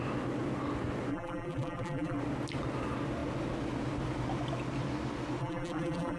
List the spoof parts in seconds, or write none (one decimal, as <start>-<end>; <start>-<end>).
1.1-2.2; 5.4-6.2